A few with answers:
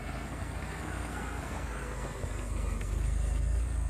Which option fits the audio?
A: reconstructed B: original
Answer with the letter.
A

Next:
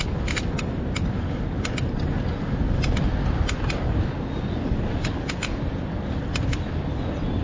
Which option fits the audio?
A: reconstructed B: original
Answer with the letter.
B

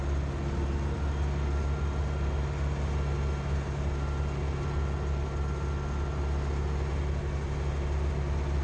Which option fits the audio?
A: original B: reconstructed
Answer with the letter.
A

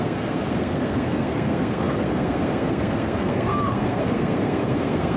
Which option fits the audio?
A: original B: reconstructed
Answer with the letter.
B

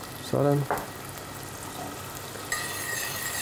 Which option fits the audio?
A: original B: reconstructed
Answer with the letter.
A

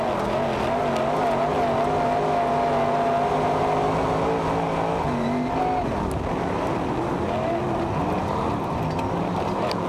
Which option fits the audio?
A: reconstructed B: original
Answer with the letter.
B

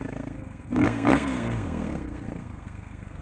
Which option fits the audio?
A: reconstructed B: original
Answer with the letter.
A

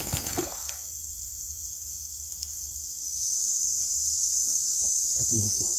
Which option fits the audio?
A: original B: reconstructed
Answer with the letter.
B